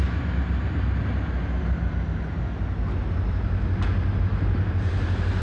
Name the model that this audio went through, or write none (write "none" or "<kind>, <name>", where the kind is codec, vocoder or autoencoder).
none